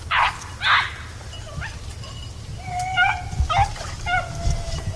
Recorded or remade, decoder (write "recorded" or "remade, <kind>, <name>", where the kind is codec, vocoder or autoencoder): recorded